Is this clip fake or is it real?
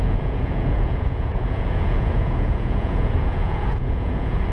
fake